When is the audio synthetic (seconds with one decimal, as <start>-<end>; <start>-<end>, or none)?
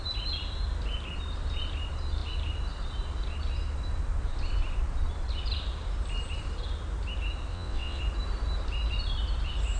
7.5-8.0